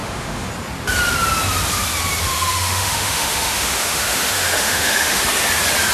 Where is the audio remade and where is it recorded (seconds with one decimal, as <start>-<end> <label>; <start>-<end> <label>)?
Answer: 0.0-0.5 remade; 0.5-2.3 recorded; 2.3-5.2 remade; 5.2-5.9 recorded